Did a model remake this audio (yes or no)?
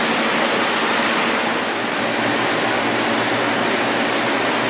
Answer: no